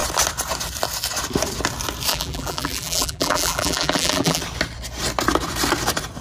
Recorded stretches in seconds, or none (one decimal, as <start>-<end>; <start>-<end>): 0.0-2.1; 4.4-6.2